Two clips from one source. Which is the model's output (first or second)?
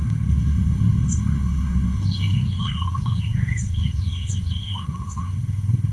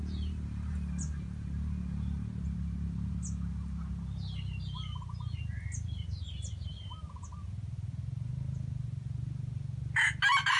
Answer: first